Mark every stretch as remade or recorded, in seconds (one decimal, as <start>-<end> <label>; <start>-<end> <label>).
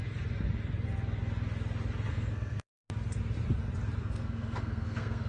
0.0-2.1 recorded; 2.1-2.8 remade; 2.8-4.0 recorded; 4.0-5.3 remade